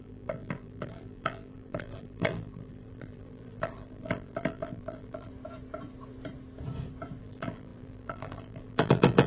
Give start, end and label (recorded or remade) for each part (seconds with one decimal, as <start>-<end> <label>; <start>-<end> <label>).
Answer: 0.0-5.3 remade; 5.3-7.2 recorded; 7.2-9.3 remade